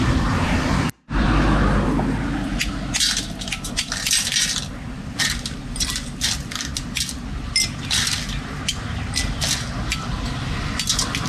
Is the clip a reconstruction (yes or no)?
no